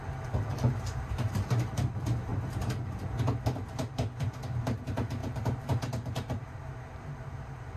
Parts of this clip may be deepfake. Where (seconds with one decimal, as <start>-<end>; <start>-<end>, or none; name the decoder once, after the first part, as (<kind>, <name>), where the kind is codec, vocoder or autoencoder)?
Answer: 0.7-2.3 (vocoder, BigVGAN v2); 3.2-7.8